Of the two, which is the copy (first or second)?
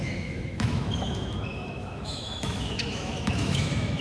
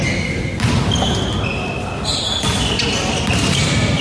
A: first